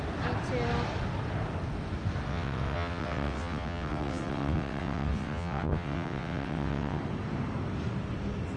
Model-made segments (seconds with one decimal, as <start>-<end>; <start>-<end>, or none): 2.3-7.0